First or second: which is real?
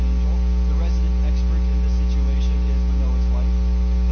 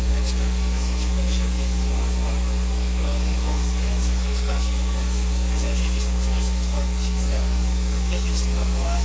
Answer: first